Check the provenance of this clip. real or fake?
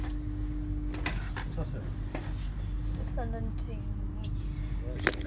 real